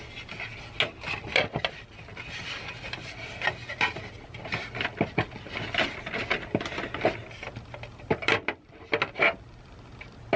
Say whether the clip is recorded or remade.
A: recorded